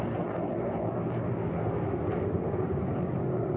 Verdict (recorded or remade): recorded